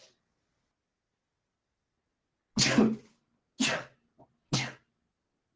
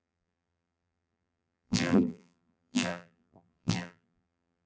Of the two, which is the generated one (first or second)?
second